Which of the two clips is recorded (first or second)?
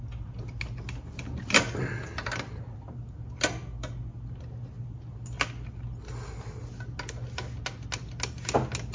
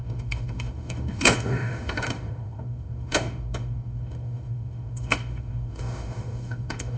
first